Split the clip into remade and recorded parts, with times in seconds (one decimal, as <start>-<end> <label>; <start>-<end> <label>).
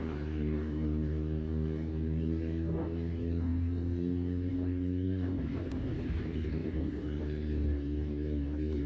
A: 0.0-8.9 remade